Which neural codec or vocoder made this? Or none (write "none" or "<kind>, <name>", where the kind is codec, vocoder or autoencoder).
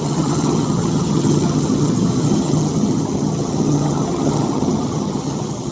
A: vocoder, HiFi-GAN